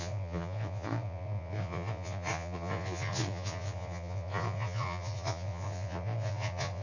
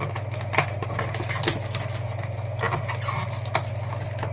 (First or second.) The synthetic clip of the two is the first